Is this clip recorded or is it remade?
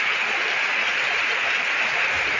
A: recorded